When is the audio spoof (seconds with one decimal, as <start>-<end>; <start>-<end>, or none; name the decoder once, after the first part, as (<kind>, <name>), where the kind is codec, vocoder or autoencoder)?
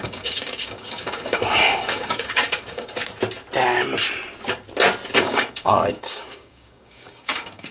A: 0.0-3.0 (codec, DAC); 5.2-7.7